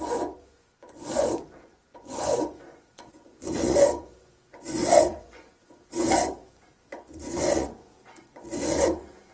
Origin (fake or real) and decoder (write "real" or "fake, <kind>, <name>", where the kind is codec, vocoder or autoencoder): fake, vocoder, Vocos